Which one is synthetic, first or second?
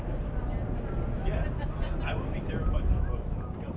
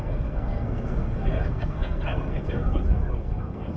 second